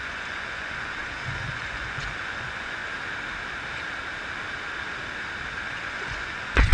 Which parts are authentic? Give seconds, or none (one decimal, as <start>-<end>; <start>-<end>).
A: 2.8-5.7